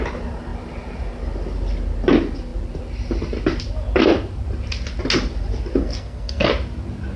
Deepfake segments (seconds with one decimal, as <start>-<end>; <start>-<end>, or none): 5.8-6.5